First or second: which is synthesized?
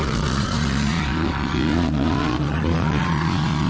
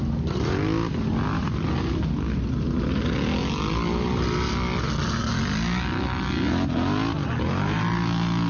first